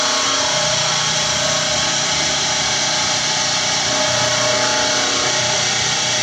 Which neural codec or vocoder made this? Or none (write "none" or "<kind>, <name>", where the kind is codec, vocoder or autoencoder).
vocoder, BigVGAN v2